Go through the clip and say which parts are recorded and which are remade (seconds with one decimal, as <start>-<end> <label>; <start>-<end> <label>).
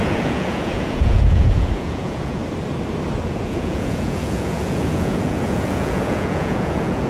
0.0-2.4 remade; 2.4-3.2 recorded; 3.2-7.1 remade